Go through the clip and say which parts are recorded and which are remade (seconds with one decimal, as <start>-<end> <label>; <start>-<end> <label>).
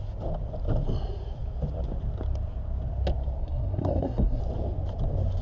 0.0-3.4 recorded; 3.4-4.4 remade; 4.4-5.4 recorded